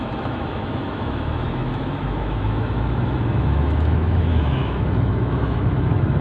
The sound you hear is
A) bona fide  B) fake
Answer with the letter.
B